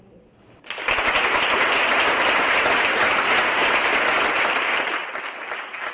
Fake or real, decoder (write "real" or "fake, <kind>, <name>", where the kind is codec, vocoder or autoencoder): real